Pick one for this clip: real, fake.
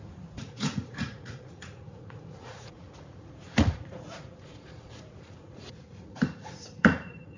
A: fake